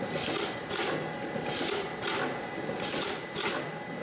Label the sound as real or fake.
real